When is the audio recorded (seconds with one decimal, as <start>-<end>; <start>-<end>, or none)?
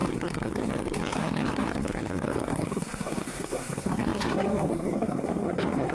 none